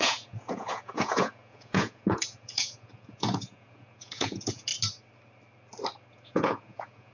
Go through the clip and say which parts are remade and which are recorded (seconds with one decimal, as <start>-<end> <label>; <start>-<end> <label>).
0.0-4.7 remade; 4.7-6.1 recorded; 6.1-7.1 remade